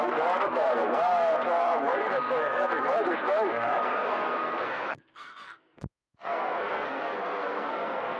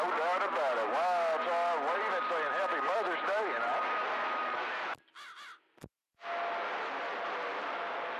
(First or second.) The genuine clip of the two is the second